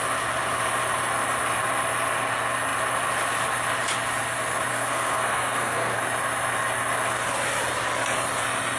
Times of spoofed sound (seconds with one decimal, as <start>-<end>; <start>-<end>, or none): 4.7-6.0